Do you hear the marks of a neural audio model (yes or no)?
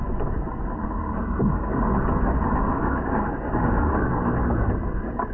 no